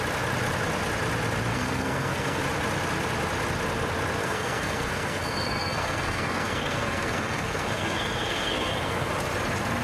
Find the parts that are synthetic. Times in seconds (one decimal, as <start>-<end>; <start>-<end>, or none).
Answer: 1.5-2.4; 4.2-9.1